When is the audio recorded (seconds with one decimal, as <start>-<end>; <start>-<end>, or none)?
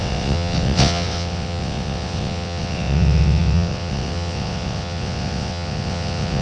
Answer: none